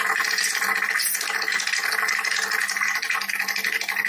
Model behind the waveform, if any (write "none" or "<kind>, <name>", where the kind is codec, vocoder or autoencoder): none